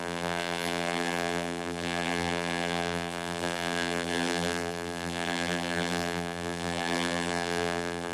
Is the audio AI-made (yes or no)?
yes